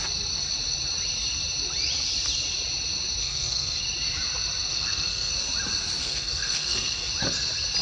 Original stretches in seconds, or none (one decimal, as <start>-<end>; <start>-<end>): 0.0-3.2; 3.8-4.7; 5.3-6.0; 7.1-7.8